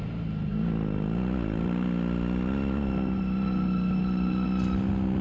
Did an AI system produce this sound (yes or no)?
no